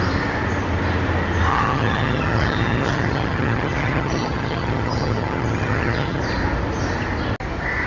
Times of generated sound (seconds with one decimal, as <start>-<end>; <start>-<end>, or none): 1.5-6.2